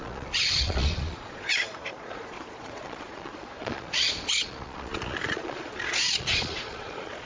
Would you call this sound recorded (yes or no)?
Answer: no